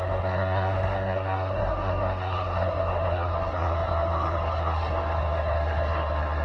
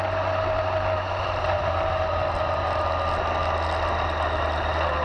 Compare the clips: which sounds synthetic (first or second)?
first